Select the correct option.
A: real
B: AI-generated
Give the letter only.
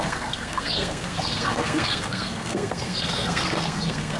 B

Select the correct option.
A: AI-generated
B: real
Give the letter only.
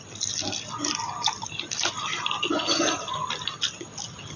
A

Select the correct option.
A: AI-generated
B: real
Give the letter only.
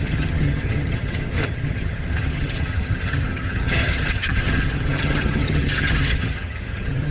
A